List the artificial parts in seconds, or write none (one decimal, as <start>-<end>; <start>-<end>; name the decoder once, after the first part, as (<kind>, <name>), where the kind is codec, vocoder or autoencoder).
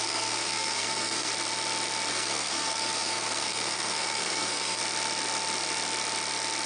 0.0-1.3 (codec, SNAC); 2.1-4.8